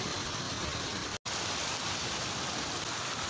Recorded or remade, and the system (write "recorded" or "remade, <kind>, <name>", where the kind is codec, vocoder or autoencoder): recorded